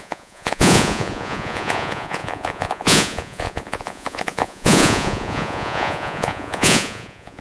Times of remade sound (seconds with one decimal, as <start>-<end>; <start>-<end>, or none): 0.0-7.4